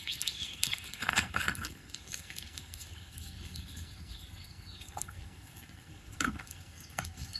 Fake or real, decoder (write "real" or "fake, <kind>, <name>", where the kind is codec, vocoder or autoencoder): fake, codec, SNAC